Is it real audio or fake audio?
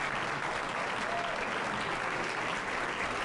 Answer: real